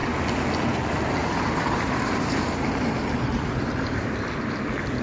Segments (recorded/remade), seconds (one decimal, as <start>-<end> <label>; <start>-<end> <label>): 0.0-1.2 recorded; 1.2-4.1 remade; 4.1-5.0 recorded